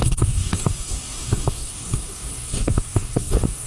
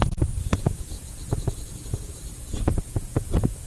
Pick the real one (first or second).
second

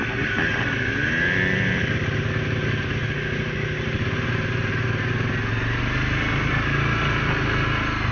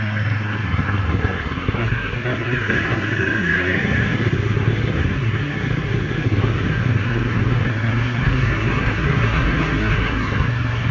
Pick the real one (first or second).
first